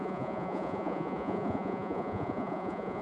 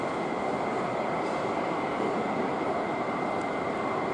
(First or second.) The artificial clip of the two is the first